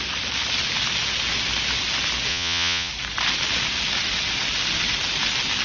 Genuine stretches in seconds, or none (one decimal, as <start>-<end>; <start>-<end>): 0.0-2.3; 2.9-5.6